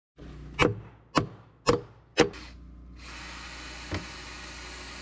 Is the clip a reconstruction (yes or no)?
no